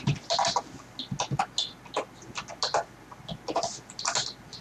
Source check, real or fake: real